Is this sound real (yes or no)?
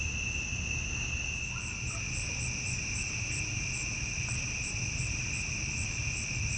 yes